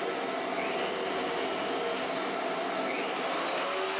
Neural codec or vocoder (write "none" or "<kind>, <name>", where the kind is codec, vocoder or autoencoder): none